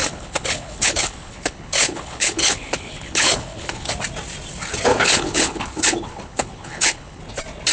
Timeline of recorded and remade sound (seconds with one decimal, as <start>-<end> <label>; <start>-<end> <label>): 0.0-3.9 remade; 3.9-4.9 recorded; 4.9-7.2 remade; 7.2-7.7 recorded